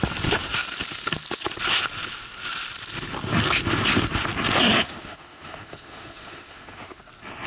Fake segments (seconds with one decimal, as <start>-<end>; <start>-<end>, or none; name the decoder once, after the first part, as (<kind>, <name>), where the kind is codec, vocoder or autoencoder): 4.8-7.0 (autoencoder, DAC-VAE)